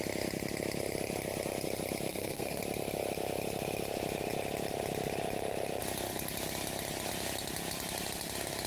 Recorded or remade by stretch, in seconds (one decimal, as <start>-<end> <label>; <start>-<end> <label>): 0.0-2.1 recorded; 2.1-2.6 remade; 2.6-8.7 recorded